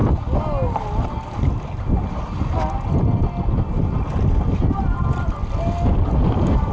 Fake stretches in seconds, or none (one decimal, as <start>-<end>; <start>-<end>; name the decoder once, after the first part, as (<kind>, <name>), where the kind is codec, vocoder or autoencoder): none